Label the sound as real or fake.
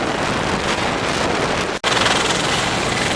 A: real